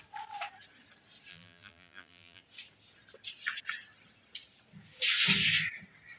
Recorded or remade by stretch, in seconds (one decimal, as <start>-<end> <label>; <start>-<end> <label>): 0.0-1.3 recorded; 1.3-2.4 remade; 2.4-6.2 recorded

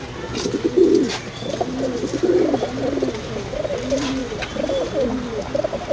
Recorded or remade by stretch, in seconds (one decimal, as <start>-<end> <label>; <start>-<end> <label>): 0.0-5.9 recorded